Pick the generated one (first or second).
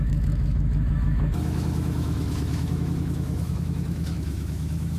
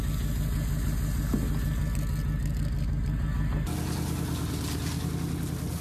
first